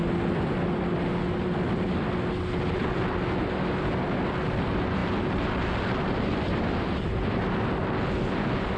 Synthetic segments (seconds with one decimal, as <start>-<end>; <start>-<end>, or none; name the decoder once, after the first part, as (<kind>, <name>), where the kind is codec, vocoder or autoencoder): none